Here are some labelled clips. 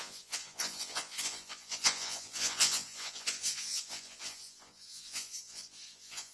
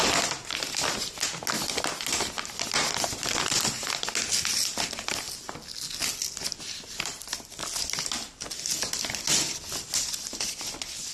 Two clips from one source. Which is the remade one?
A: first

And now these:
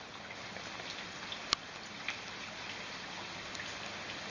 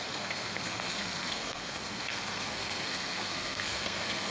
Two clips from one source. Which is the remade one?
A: second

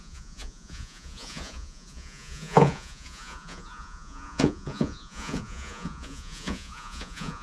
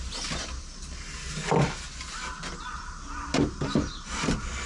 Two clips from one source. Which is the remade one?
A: first